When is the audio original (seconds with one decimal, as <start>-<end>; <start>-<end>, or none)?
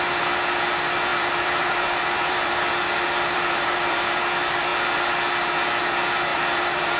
0.0-1.1; 4.2-6.3